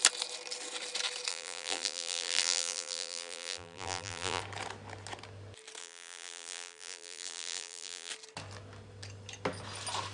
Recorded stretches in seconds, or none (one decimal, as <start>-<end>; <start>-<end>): 0.0-1.3; 4.4-5.8; 8.1-10.1